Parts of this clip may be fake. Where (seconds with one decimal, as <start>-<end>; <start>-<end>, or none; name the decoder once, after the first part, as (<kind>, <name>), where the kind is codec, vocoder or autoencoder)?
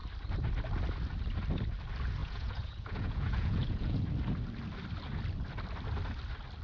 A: 2.2-4.0 (vocoder, Vocos)